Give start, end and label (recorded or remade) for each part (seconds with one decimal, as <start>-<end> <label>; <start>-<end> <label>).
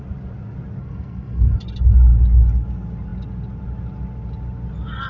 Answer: 0.0-0.8 recorded; 0.8-1.6 remade; 1.6-5.1 recorded